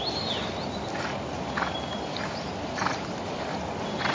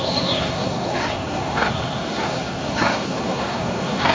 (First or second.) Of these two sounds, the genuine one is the first